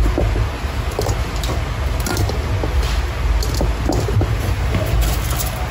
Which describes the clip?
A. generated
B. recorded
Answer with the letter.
B